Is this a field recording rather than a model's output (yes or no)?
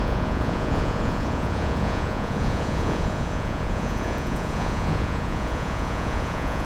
no